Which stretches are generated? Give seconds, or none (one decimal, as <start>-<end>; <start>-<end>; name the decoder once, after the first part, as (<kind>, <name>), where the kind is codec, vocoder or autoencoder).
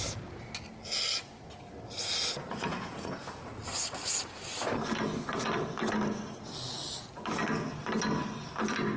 2.7-3.4 (vocoder, Vocos)